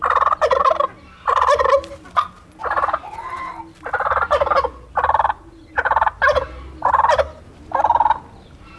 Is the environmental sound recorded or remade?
recorded